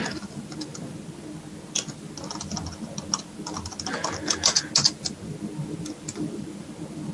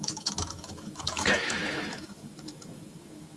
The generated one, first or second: second